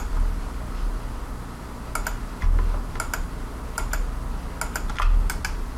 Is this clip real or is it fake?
real